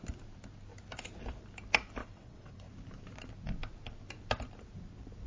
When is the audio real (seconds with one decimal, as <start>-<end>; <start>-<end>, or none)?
0.0-2.0; 2.7-5.3